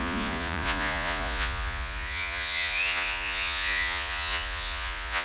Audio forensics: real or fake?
fake